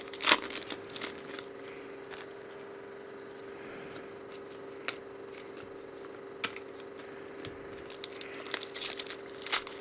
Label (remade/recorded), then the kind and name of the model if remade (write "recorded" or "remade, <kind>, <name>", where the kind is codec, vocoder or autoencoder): recorded